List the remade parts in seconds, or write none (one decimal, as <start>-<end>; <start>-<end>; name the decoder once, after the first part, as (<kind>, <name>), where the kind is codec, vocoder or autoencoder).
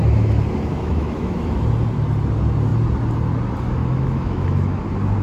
0.7-1.6 (autoencoder, DAC-VAE); 3.8-4.8